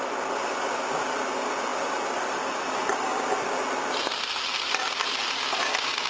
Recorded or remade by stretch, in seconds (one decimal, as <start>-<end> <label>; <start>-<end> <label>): 0.0-6.1 recorded